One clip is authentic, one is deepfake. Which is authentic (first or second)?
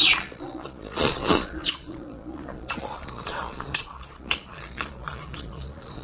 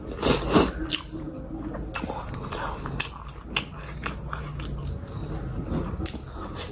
second